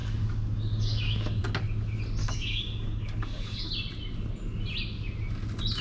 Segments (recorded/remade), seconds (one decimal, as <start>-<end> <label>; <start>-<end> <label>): 0.0-1.4 remade; 1.4-2.2 recorded; 2.2-3.7 remade; 3.7-5.8 recorded